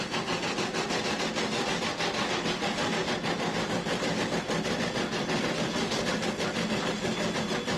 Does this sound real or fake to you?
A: real